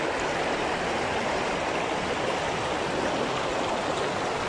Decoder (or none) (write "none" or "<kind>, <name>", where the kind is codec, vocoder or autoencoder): none